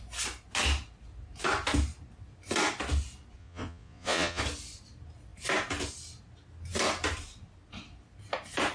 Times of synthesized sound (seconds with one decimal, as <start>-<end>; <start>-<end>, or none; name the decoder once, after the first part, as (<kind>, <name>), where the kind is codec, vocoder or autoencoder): 3.4-4.4 (vocoder, Vocos)